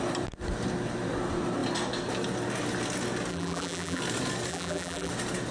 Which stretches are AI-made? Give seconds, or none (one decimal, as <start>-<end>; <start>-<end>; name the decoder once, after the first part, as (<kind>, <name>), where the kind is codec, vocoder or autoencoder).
3.3-4.0 (vocoder, BigVGAN v2); 4.5-5.1